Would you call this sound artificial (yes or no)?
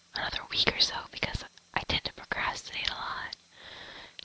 no